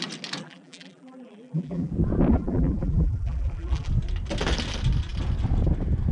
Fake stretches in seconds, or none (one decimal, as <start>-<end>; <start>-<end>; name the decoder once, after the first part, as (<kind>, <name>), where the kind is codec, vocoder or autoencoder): 0.4-1.9 (vocoder, BigVGAN v2); 2.3-3.9